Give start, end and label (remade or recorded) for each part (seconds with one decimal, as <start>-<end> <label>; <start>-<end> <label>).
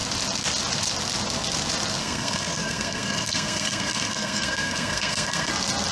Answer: 0.0-2.0 recorded; 2.0-5.5 remade; 5.5-5.9 recorded